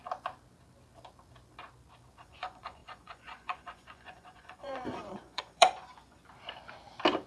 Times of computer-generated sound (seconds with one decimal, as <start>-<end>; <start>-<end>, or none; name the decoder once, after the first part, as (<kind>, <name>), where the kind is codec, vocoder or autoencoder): 2.2-6.2 (vocoder, Vocos)

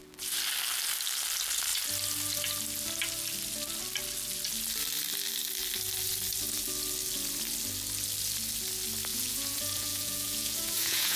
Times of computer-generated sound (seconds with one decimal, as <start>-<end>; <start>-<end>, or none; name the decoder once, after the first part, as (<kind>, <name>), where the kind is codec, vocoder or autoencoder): 9.1-11.2 (vocoder, Vocos)

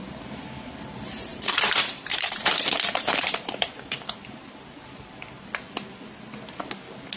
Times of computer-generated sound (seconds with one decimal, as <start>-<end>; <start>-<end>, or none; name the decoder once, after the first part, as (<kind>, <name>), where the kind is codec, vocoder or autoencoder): 1.3-5.1 (vocoder, BigVGAN v2)

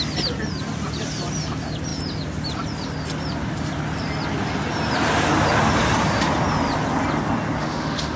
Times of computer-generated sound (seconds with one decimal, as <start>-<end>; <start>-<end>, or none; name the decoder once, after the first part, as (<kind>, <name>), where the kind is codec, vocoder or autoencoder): 7.6-8.2 (autoencoder, DAC-VAE)